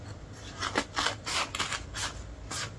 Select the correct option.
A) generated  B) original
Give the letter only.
B